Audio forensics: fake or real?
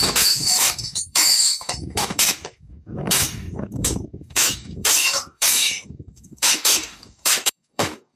fake